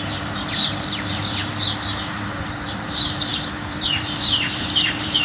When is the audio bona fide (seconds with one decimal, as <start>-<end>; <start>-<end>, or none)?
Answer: 1.4-1.9